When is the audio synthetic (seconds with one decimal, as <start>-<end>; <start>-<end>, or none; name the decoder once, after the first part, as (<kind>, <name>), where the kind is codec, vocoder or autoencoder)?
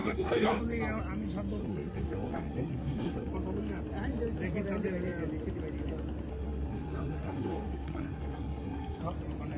0.0-0.6 (codec, SNAC); 1.6-3.3; 6.3-9.0